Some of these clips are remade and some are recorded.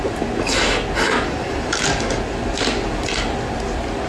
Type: recorded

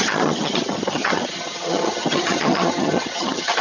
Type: remade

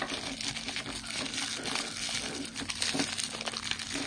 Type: recorded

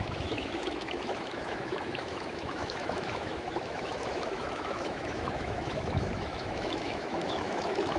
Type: remade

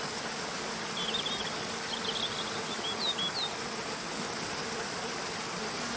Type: recorded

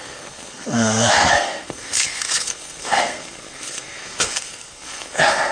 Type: remade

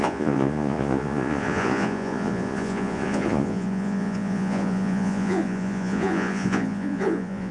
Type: remade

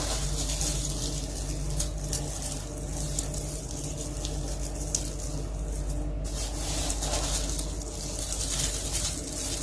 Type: recorded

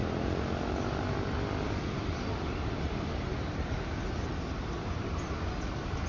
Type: recorded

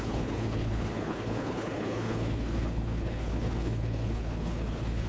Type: remade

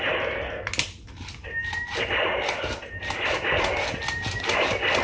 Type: recorded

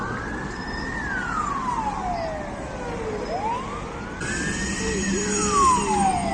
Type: recorded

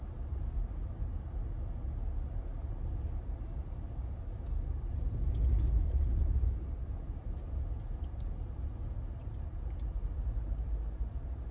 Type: recorded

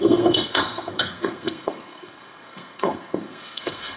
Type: remade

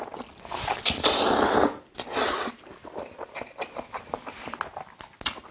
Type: recorded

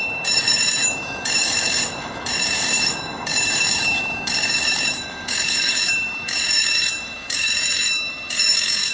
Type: remade